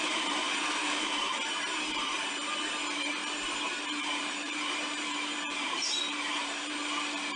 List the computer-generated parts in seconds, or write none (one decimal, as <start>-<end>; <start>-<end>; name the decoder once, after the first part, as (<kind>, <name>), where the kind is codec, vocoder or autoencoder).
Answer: 0.0-3.2 (vocoder, BigVGAN v2); 3.7-7.4